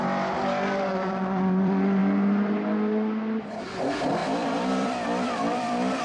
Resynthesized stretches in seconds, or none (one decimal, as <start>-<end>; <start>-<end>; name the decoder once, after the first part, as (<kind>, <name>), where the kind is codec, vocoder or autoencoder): 0.0-2.0 (vocoder, BigVGAN v2); 3.4-6.0